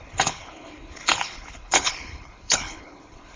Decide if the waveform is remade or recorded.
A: remade